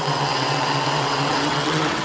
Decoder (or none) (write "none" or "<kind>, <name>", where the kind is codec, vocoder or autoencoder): vocoder, WaveNeXt